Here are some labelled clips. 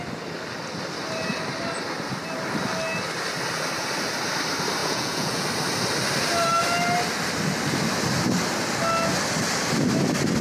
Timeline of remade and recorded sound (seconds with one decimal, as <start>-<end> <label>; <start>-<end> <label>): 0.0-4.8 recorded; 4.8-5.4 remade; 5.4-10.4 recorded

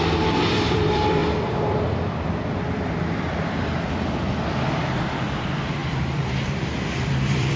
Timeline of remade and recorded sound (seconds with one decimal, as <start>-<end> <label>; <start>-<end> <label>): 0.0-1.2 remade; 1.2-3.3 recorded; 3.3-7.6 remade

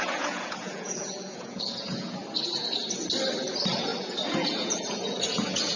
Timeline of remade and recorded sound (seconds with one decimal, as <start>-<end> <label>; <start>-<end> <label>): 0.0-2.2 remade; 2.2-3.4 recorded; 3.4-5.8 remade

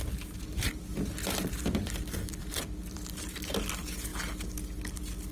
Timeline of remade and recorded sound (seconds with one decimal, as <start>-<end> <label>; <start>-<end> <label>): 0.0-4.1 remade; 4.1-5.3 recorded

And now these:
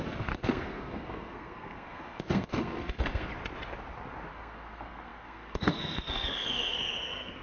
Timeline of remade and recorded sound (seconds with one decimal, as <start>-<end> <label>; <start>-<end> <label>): 0.0-3.3 remade; 3.3-4.3 recorded; 4.3-7.4 remade

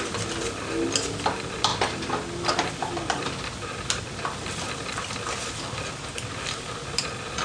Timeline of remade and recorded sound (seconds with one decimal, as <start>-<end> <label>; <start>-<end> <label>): 0.0-7.4 recorded

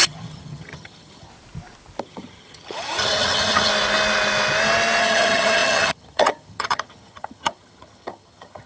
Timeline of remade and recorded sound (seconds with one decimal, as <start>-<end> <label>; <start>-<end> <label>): 0.0-1.3 remade; 1.3-2.0 recorded; 2.0-3.7 remade; 3.7-5.0 recorded; 5.0-8.7 remade

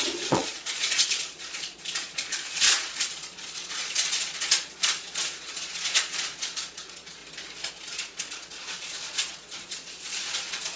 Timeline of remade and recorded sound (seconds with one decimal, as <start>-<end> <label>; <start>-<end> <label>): 0.0-7.2 remade; 7.2-7.7 recorded; 7.7-10.8 remade